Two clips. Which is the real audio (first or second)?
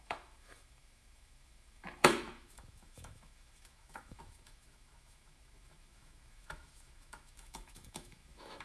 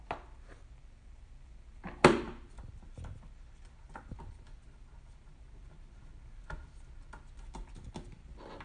second